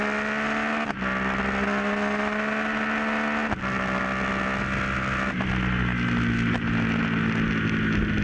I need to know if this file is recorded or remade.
recorded